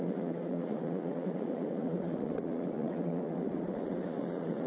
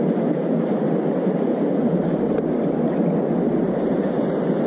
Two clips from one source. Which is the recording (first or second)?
second